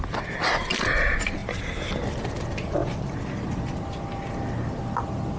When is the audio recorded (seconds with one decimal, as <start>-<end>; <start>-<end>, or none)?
0.0-1.4; 2.0-5.4